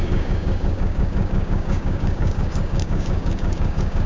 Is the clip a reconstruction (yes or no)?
yes